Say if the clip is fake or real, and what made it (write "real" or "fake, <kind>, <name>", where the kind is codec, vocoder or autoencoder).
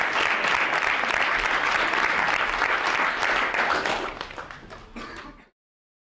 real